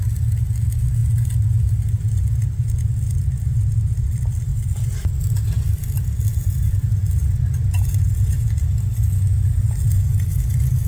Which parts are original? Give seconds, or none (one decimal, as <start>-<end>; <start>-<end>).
0.0-1.0; 1.8-4.5; 5.1-10.9